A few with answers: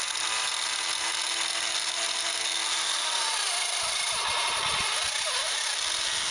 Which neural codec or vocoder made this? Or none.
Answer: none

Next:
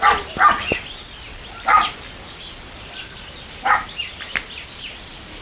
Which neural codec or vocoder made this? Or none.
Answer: none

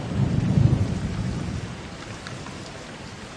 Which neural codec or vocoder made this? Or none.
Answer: vocoder, BigVGAN v2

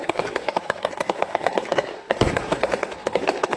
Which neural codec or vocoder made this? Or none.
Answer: codec, SNAC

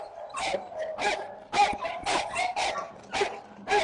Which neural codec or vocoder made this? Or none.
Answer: none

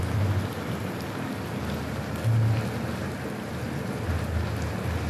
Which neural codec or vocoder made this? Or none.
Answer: none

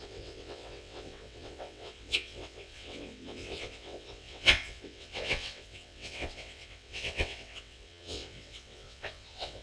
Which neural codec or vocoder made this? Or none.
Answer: vocoder, WaveNeXt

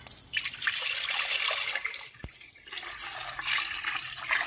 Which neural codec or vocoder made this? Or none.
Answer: none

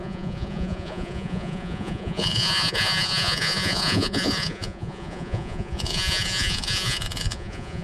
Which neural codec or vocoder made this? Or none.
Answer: vocoder, Vocos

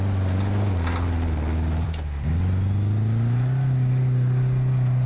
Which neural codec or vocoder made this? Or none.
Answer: none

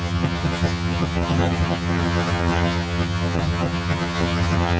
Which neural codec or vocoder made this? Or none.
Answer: vocoder, HiFi-GAN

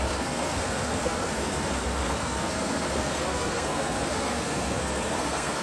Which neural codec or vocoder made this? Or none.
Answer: codec, SNAC